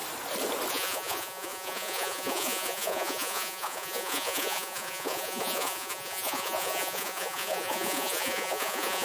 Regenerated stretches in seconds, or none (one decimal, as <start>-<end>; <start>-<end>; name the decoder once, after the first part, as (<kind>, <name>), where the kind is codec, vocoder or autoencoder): 0.7-9.0 (vocoder, Vocos)